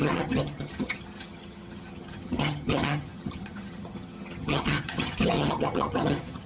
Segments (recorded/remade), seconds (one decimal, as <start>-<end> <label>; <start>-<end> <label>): 0.0-6.5 remade